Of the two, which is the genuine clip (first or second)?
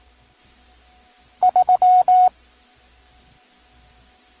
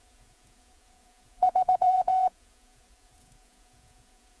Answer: first